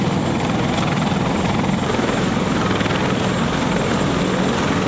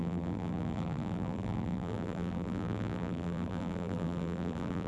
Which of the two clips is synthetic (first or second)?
second